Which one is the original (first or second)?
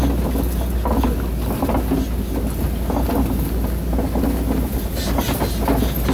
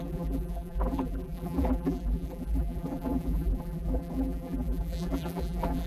first